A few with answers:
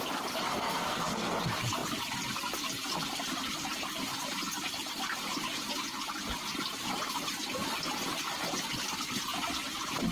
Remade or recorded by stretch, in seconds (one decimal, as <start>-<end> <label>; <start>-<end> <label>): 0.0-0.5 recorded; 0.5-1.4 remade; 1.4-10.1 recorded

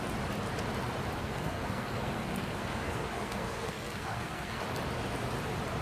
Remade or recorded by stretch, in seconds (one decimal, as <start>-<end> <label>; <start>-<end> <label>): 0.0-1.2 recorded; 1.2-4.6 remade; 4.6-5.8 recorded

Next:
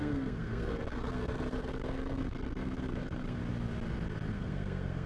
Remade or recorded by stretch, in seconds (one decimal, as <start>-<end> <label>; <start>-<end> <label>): 0.0-3.4 remade; 3.4-4.3 recorded; 4.3-5.1 remade

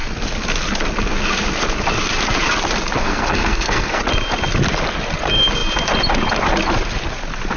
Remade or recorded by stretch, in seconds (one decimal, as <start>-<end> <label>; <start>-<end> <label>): 0.0-3.0 recorded; 3.0-4.0 remade; 4.0-7.6 recorded

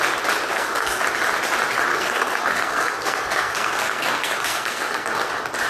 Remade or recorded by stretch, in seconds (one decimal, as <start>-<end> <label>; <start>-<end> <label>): 0.0-0.5 recorded; 0.5-1.0 remade; 1.0-1.9 recorded; 1.9-5.3 remade; 5.3-5.7 recorded

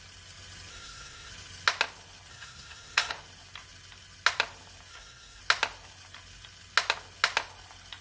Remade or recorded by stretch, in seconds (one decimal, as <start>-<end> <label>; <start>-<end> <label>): 0.0-0.7 recorded; 0.7-1.3 remade; 1.3-2.3 recorded; 2.3-3.1 remade; 3.1-4.9 recorded; 4.9-5.4 remade; 5.4-8.0 recorded